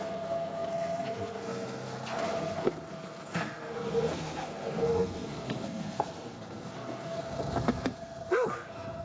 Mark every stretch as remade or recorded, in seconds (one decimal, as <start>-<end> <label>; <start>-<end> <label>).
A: 0.0-9.0 remade